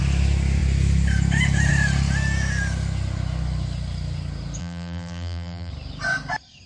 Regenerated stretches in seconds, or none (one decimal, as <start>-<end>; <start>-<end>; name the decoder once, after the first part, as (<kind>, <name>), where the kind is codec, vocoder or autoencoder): 4.6-5.7 (vocoder, BigVGAN v2)